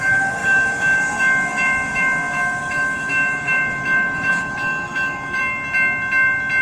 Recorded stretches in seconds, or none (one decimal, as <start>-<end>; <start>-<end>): 5.4-6.6